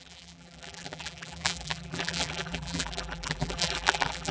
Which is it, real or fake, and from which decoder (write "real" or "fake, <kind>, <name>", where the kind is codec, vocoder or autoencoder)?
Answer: fake, vocoder, BigVGAN v2